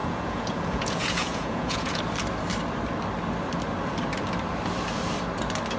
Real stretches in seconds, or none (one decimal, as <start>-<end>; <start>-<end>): 2.0-5.8